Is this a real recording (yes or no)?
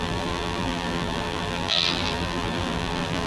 no